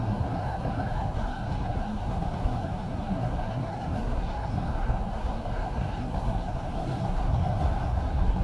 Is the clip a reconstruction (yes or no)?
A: yes